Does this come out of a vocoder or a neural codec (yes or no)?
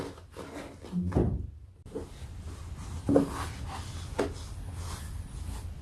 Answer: no